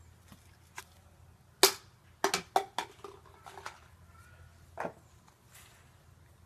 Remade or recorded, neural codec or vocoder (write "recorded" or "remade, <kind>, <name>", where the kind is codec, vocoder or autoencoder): recorded